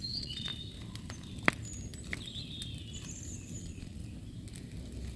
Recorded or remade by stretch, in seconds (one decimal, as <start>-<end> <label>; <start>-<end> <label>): 0.0-0.5 remade; 0.5-3.6 recorded; 3.6-4.0 remade; 4.0-5.2 recorded